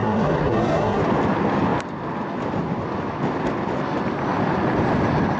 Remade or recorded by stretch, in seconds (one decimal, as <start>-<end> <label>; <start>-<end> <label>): 0.0-1.0 remade; 1.0-5.4 recorded